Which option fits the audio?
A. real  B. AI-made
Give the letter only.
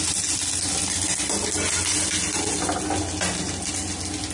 A